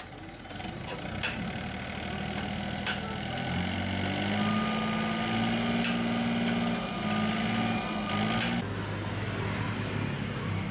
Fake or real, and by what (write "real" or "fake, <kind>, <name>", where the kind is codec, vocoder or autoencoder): real